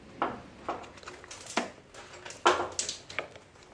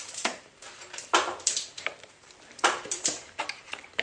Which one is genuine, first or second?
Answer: first